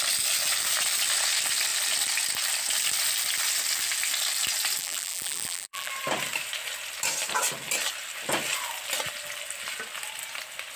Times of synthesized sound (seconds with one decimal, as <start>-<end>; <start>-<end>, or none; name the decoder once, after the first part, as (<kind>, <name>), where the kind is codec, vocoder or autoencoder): 4.8-5.9 (vocoder, BigVGAN v2)